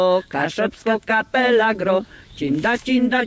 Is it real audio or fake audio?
fake